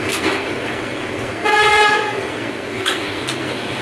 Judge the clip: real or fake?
fake